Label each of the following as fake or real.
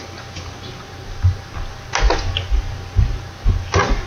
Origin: real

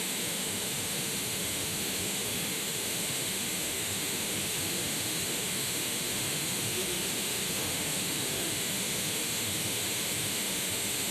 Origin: fake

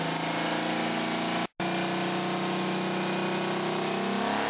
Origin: real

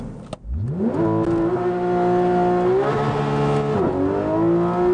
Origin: real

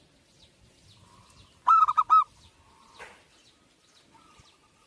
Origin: real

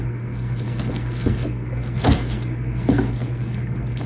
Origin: fake